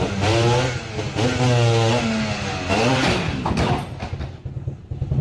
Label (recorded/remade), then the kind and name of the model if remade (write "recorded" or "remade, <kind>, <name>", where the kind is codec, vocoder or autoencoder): recorded